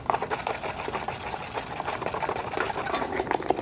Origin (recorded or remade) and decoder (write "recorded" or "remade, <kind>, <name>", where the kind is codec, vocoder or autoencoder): recorded